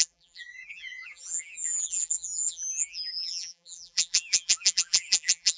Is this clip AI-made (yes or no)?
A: yes